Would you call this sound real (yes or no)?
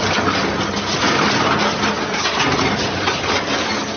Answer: yes